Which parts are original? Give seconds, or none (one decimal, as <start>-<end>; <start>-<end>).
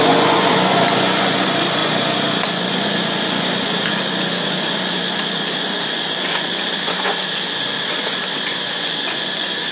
none